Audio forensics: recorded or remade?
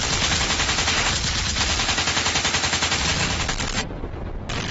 recorded